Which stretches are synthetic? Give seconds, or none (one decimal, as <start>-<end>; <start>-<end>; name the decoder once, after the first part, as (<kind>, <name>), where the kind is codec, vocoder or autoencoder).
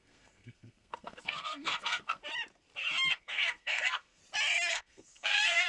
0.0-2.2 (codec, SNAC); 3.1-4.2; 4.7-5.7